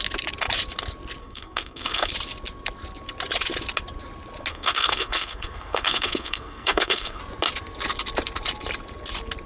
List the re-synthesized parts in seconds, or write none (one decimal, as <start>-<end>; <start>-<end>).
1.2-2.1; 4.5-7.2